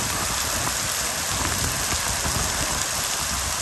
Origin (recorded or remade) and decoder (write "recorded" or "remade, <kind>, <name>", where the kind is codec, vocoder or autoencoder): recorded